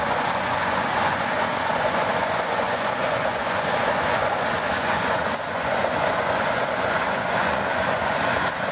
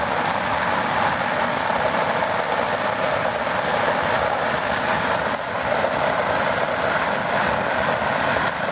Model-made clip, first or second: first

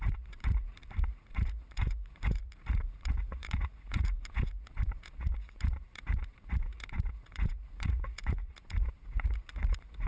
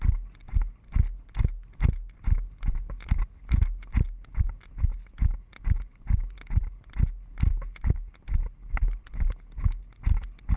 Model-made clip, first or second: first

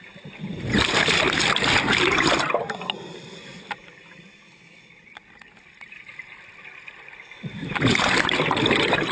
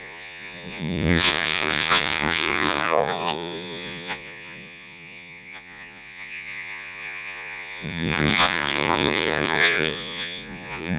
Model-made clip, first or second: second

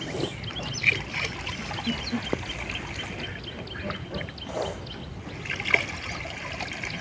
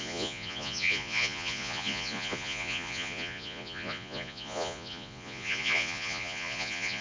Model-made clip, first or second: second